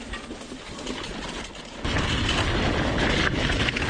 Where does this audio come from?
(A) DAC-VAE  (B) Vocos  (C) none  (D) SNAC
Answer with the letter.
C